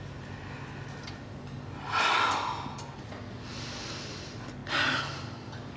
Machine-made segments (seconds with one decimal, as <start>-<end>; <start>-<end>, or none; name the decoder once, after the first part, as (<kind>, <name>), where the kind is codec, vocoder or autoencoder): none